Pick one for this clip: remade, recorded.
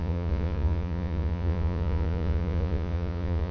remade